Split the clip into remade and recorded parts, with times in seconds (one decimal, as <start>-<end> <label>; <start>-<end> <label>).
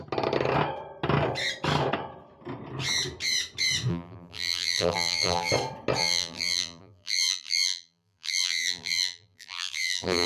0.0-3.9 recorded; 3.9-5.5 remade; 5.5-6.0 recorded; 6.0-10.3 remade